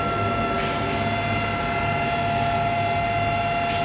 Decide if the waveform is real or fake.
real